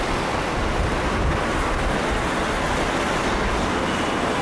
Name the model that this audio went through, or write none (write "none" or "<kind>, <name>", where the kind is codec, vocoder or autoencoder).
none